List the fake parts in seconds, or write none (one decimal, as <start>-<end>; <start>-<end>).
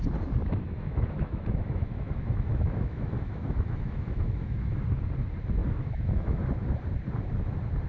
0.4-4.8; 5.6-6.4